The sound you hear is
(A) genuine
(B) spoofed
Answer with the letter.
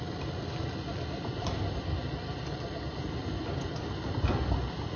A